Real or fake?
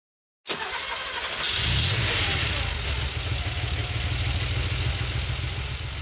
real